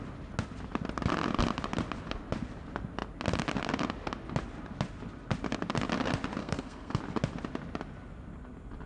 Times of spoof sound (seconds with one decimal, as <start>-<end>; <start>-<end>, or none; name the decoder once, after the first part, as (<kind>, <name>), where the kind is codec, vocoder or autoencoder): 6.4-7.0 (codec, SNAC)

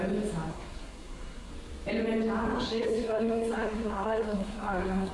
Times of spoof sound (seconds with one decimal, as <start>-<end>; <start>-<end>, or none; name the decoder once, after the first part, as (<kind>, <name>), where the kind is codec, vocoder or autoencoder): 0.5-1.5 (codec, SNAC); 2.4-5.1

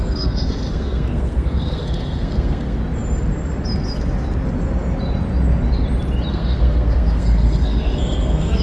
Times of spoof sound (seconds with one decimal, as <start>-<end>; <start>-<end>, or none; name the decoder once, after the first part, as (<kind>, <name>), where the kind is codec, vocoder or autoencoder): 0.0-2.8 (codec, SNAC); 6.3-8.6

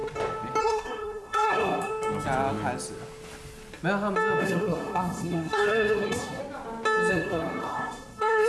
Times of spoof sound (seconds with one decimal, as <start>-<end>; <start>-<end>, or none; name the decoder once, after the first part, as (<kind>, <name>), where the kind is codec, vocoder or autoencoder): 0.6-1.9 (codec, SNAC); 4.4-6.4; 7.1-8.5

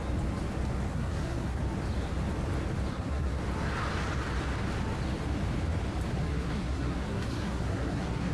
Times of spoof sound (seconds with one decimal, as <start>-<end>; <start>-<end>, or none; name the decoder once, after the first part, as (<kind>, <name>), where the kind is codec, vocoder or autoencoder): 0.9-1.6 (codec, SNAC); 2.9-3.4; 6.1-8.3